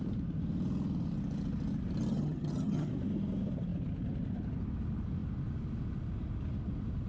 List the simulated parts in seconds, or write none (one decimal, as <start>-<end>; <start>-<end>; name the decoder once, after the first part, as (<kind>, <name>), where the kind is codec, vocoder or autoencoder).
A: 2.1-2.9 (vocoder, HiFi-GAN)